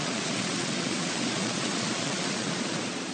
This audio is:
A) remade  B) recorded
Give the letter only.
A